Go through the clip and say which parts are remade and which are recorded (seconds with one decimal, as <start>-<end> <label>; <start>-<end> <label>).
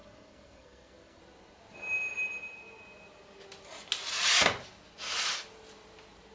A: 0.0-1.2 remade; 1.2-6.3 recorded